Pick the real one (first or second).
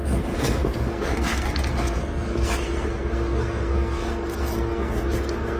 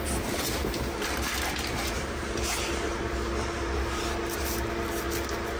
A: second